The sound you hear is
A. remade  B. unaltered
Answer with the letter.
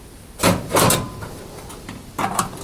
B